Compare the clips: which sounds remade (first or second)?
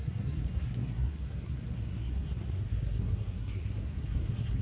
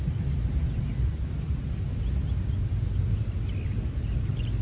first